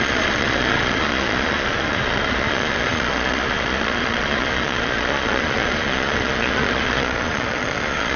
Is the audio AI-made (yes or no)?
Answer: yes